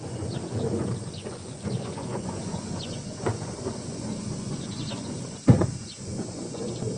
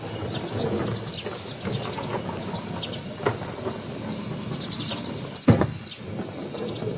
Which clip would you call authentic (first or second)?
second